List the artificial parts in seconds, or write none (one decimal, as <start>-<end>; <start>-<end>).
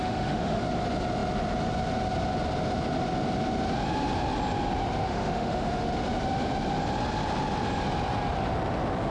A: 0.0-0.6; 5.0-5.9